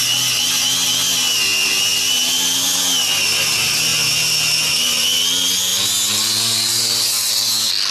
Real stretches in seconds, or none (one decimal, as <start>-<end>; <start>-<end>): 0.0-7.9

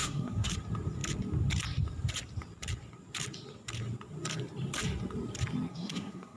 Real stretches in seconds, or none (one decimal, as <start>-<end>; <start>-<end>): 0.5-5.7

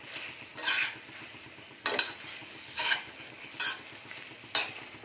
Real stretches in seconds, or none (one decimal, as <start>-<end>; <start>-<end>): 0.0-2.3; 3.5-5.0

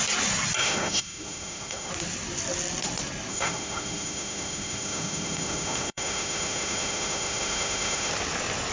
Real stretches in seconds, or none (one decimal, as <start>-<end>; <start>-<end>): 0.0-0.6; 1.9-3.3; 8.1-8.7

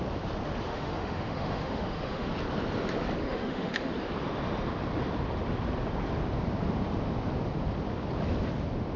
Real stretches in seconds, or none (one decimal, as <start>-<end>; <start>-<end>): 0.0-0.7; 2.3-3.2; 3.9-9.0

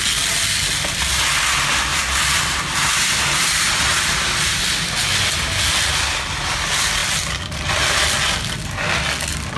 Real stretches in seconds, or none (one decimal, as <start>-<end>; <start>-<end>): 0.0-1.9; 3.6-9.6

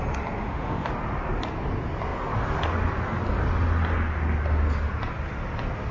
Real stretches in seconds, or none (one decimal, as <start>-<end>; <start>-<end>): 0.0-0.4; 0.9-5.9